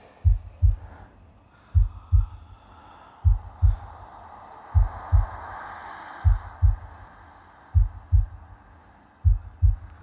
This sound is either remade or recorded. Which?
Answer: recorded